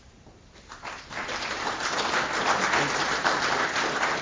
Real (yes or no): yes